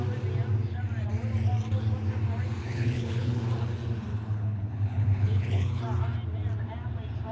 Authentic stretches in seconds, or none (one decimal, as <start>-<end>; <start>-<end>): 0.0-2.6; 3.4-4.1; 5.8-7.3